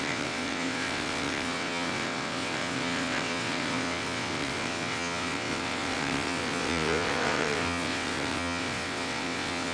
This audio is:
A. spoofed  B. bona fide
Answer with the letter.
A